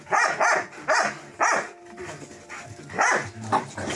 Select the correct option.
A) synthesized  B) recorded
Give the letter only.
B